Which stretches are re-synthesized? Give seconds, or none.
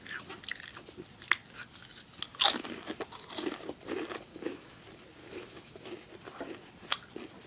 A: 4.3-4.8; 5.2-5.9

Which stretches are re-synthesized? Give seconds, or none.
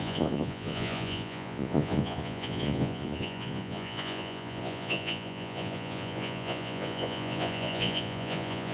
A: 0.0-8.7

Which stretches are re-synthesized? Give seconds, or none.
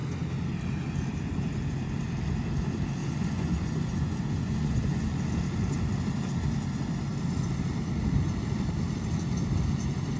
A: 3.0-5.2